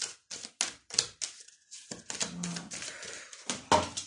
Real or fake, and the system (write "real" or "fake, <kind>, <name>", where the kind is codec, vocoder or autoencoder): real